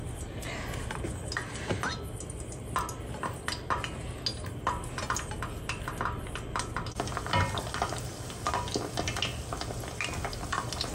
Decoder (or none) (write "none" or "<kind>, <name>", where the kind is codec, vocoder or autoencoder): none